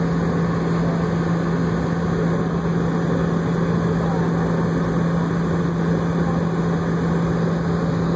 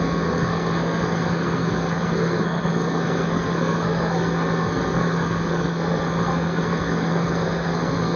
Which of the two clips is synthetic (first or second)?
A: second